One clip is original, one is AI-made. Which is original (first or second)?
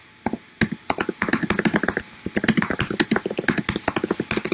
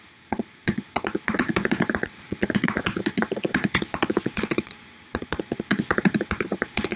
first